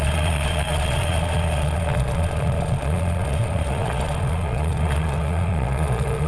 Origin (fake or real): fake